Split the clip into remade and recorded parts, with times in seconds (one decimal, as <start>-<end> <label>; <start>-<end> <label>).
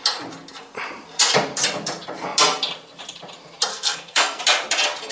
0.0-3.7 recorded; 3.7-4.4 remade; 4.4-5.1 recorded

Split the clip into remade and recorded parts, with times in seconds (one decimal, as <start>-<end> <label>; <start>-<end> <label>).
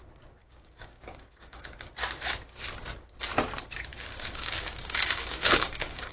0.0-0.4 recorded; 0.4-1.9 remade; 1.9-3.9 recorded; 3.9-6.1 remade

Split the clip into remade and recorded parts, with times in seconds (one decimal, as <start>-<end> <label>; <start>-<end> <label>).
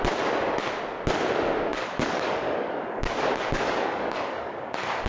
0.0-1.7 recorded; 1.7-5.1 remade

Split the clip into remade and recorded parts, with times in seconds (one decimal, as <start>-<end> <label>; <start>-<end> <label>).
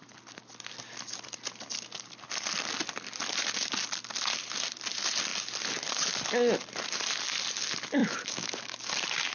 0.0-8.0 recorded; 8.0-8.8 remade; 8.8-9.3 recorded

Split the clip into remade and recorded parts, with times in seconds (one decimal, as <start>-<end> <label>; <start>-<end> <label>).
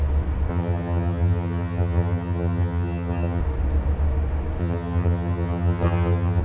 0.0-0.5 recorded; 0.5-3.4 remade; 3.4-4.6 recorded; 4.6-6.4 remade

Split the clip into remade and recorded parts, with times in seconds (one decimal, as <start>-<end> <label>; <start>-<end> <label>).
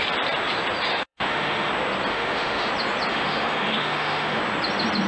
0.0-0.9 recorded; 0.9-1.7 remade; 1.7-2.1 recorded; 2.1-2.7 remade; 2.7-3.1 recorded; 3.1-4.4 remade; 4.4-5.1 recorded